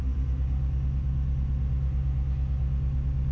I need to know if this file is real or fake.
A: real